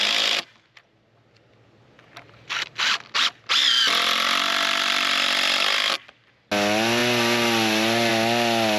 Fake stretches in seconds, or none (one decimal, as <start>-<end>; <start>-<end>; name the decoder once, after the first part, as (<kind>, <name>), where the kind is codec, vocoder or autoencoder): none